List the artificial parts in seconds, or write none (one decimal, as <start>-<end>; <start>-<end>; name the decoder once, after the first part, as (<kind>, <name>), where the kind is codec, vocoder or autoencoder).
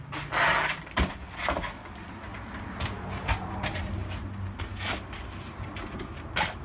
2.3-3.5 (vocoder, BigVGAN v2)